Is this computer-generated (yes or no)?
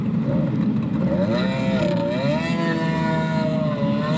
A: no